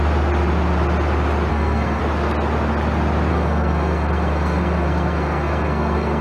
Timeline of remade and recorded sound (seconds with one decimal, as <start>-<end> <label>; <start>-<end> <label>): 0.0-1.5 recorded; 1.5-2.0 remade; 2.0-3.3 recorded; 3.3-6.2 remade